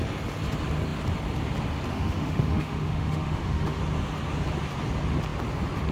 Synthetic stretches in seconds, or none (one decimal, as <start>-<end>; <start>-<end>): 1.9-3.8